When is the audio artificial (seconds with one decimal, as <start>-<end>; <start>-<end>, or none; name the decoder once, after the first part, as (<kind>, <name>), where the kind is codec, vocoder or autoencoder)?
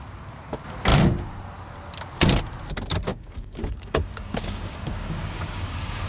3.1-6.1 (codec, DAC)